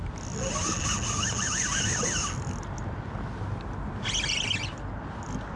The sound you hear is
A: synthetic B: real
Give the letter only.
B